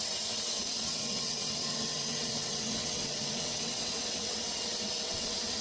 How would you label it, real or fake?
fake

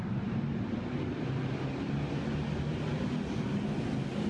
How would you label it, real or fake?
real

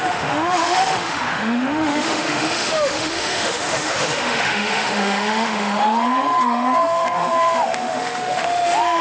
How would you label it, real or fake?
fake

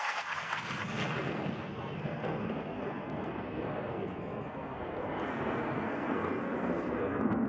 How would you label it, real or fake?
fake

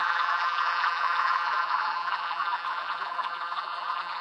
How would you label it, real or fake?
fake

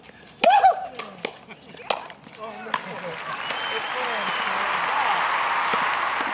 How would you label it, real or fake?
real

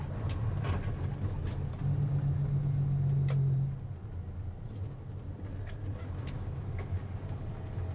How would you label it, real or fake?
real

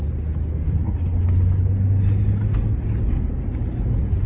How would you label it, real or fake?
real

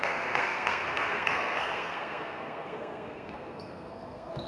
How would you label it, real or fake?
fake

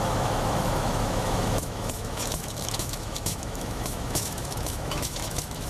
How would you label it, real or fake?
fake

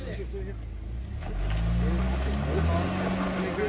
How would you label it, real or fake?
real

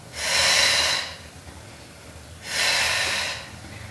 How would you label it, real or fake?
real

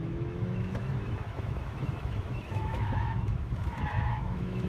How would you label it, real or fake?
fake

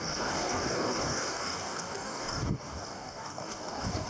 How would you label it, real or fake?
fake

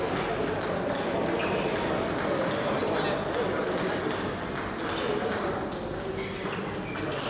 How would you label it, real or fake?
real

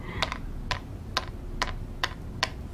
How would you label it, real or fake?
real